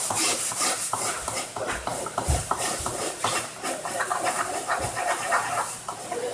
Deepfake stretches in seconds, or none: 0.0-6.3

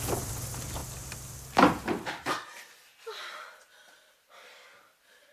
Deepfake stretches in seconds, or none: none

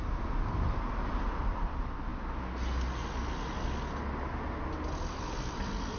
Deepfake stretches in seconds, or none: none

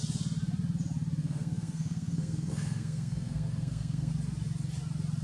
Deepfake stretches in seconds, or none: 1.2-4.1

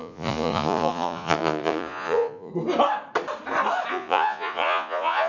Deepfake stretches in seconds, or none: 0.0-2.5; 3.9-5.3

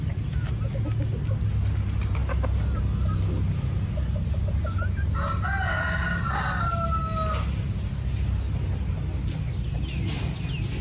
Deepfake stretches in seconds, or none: none

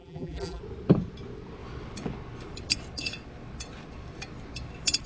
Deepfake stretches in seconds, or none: 0.0-0.6

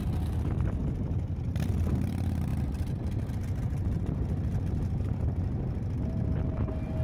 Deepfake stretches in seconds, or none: none